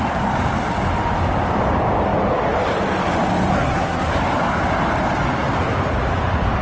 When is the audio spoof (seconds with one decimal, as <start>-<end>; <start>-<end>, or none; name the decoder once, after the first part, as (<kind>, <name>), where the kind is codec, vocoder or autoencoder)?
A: 3.5-4.1 (codec, SNAC)

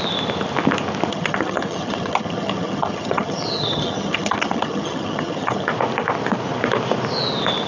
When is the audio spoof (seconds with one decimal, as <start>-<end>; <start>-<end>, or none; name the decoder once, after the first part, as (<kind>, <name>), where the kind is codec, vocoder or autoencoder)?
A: 1.1-5.7 (vocoder, HiFi-GAN)

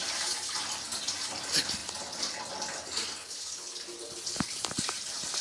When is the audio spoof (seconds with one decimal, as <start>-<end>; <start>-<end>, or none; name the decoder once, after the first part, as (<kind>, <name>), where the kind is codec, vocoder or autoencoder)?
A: 3.2-3.8 (codec, HILCodec)

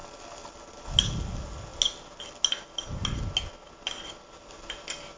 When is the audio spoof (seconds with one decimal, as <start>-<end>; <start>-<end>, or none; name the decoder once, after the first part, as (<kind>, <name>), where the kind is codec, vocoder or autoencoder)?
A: none